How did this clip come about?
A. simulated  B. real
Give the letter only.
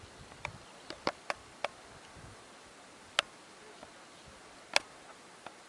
B